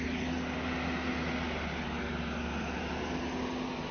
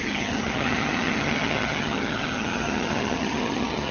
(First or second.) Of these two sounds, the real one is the first